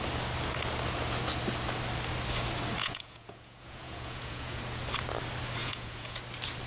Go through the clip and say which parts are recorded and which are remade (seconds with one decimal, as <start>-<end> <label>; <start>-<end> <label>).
0.0-2.8 recorded; 2.8-4.6 remade; 4.6-5.6 recorded; 5.6-6.2 remade; 6.2-6.7 recorded